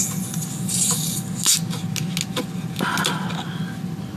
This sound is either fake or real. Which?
real